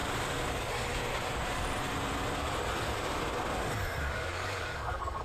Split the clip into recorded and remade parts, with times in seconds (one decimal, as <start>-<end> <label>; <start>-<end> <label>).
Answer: 0.0-0.5 recorded; 0.5-0.9 remade; 0.9-4.0 recorded; 4.0-5.2 remade